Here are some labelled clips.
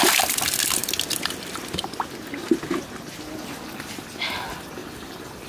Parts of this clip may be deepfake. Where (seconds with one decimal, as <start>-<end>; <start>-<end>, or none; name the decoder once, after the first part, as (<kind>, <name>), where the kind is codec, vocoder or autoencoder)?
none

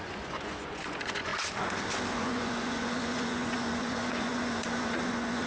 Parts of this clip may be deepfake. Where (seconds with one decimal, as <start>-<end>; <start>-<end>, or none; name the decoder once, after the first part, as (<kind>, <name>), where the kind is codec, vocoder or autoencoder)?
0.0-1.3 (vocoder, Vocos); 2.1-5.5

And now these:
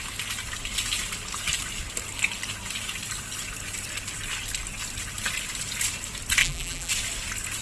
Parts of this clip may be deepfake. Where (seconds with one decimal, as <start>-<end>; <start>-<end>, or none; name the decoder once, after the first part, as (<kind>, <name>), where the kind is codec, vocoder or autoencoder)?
6.4-6.9 (vocoder, BigVGAN v2)

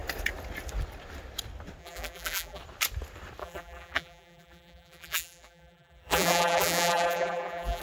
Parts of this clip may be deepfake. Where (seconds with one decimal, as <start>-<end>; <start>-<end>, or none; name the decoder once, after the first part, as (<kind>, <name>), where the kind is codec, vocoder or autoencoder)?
1.8-2.6 (vocoder, BigVGAN v2); 3.4-7.8